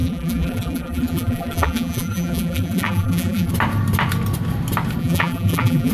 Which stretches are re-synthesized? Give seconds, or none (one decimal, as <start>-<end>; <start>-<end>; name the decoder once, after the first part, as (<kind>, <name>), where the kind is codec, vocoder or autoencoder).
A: 0.0-3.5 (vocoder, BigVGAN v2); 5.0-5.9